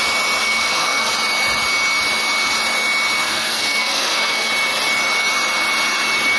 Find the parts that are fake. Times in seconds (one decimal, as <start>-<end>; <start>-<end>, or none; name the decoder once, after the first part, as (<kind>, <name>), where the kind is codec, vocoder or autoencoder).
0.4-1.1 (codec, SNAC); 3.2-4.5